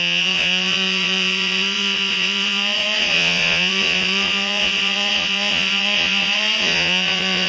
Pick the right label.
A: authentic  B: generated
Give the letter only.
B